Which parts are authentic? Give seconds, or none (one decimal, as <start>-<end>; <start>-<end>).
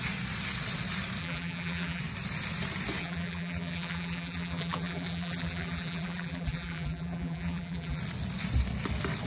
0.0-1.2; 2.0-3.0; 8.0-9.3